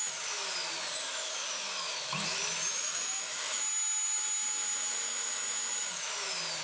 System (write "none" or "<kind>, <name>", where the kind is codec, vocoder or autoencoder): autoencoder, DAC-VAE